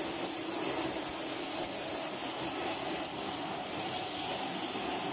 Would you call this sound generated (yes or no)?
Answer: no